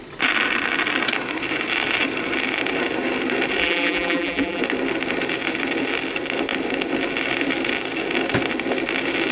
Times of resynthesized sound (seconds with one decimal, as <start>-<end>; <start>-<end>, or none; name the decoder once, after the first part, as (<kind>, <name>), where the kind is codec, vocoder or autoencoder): 3.6-4.6 (vocoder, BigVGAN v2)